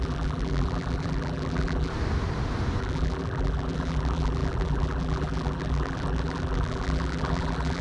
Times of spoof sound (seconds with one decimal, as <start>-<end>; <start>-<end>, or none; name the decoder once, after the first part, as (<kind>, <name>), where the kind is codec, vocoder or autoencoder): 0.0-1.9 (vocoder, BigVGAN v2); 2.8-7.8